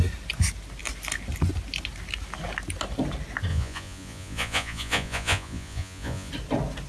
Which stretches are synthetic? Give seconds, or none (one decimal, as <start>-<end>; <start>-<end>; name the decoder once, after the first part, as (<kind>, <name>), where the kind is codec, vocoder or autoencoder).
3.5-6.3 (vocoder, Vocos)